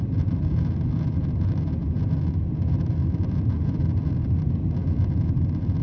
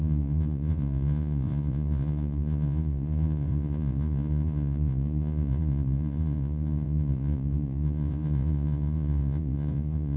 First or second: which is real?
first